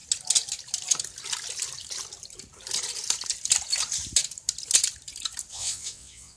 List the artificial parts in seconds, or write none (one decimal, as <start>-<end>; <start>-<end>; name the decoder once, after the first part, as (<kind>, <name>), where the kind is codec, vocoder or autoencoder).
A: 5.5-6.4 (vocoder, WaveNeXt)

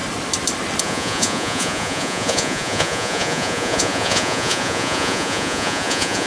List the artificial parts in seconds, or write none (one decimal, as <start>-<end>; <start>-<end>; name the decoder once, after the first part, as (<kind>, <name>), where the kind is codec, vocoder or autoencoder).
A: 0.8-6.3 (vocoder, Vocos)